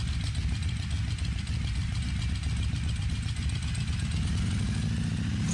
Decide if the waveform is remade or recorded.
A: recorded